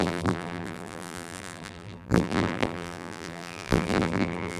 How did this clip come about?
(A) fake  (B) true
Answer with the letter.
A